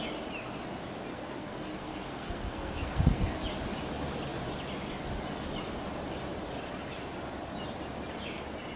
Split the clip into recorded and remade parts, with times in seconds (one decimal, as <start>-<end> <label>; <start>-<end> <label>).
0.0-1.1 recorded; 1.1-3.4 remade; 3.4-8.8 recorded